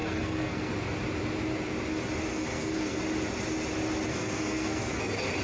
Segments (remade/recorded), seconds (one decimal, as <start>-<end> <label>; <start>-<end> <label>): 0.0-0.7 remade; 0.7-2.3 recorded; 2.3-3.0 remade; 3.0-4.1 recorded; 4.1-4.9 remade; 4.9-5.4 recorded